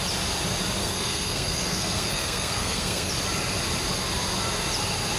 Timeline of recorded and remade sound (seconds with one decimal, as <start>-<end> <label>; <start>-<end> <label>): 0.0-0.8 recorded; 0.8-3.1 remade; 3.1-5.2 recorded